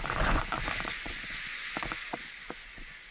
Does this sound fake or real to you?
fake